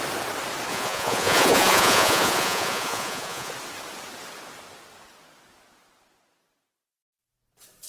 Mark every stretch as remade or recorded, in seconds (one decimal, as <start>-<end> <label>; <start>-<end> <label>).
0.0-0.7 recorded; 0.7-3.5 remade; 3.5-7.9 recorded

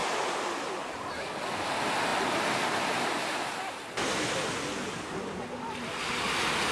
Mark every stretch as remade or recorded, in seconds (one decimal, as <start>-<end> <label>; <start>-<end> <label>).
0.0-6.7 recorded

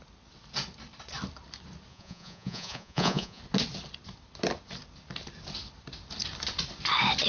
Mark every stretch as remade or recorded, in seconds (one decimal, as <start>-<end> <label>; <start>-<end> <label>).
0.0-1.9 recorded; 1.9-3.4 remade; 3.4-7.3 recorded

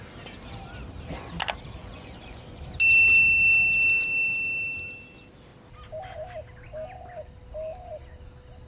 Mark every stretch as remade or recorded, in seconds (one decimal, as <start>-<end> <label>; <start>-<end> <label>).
0.0-1.8 recorded; 1.8-2.6 remade; 2.6-8.7 recorded